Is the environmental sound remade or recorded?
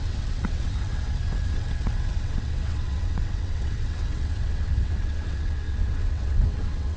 remade